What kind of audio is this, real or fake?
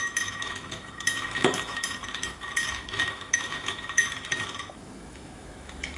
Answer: fake